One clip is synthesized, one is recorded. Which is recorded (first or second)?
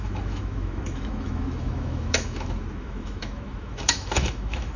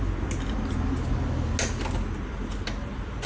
second